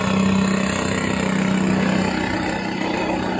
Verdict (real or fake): real